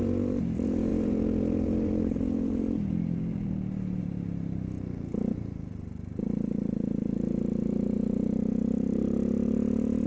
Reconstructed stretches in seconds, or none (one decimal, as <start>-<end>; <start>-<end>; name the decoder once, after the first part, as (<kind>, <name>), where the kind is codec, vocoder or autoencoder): 0.0-10.1 (vocoder, BigVGAN v2)